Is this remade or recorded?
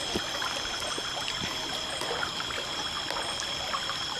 recorded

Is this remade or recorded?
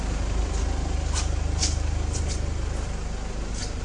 recorded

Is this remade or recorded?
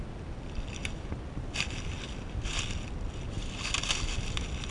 recorded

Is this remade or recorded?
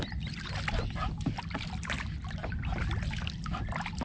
recorded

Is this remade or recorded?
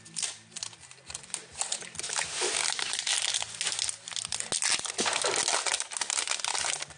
recorded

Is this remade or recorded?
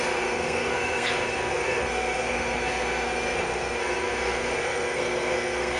remade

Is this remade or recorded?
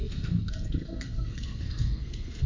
remade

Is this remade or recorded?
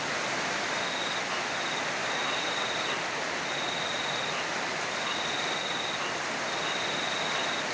recorded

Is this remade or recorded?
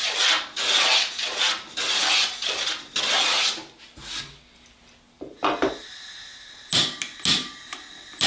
recorded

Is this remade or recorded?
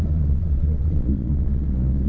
remade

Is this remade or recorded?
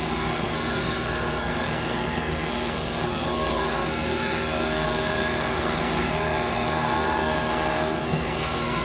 remade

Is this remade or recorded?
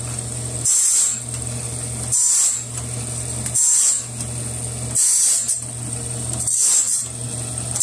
recorded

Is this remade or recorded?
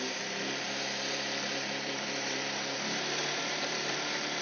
remade